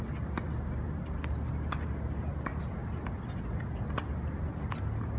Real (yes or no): yes